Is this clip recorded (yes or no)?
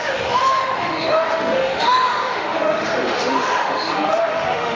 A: no